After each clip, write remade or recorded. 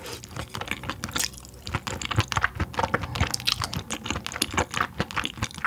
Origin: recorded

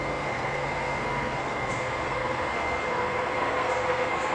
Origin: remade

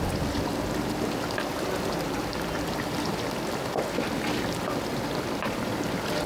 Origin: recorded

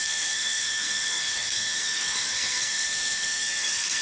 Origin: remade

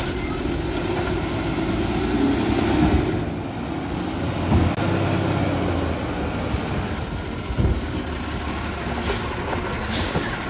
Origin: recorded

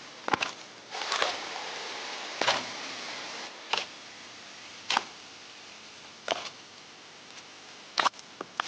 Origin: recorded